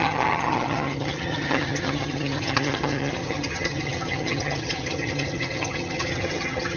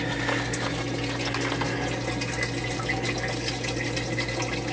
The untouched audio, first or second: second